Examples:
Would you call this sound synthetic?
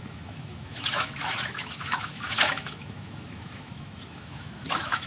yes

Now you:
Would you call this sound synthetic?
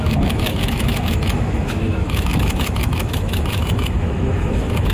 yes